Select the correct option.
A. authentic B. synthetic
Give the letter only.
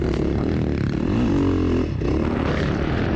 A